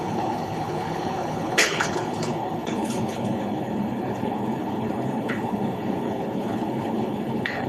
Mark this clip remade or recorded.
remade